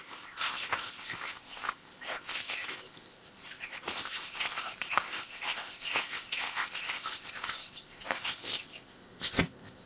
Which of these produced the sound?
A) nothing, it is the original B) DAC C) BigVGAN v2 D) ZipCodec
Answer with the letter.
D